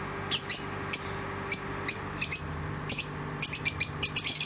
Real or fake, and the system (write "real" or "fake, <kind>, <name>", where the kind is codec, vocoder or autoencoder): real